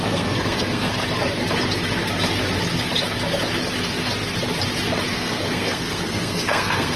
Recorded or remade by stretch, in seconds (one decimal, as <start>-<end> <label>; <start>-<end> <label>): 0.0-0.9 remade; 0.9-5.1 recorded; 5.1-7.0 remade